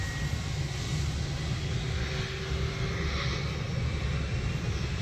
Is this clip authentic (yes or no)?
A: yes